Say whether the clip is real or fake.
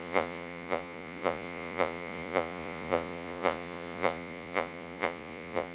fake